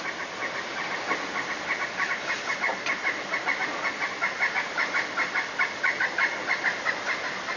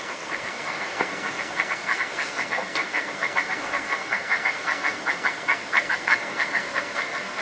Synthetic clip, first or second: second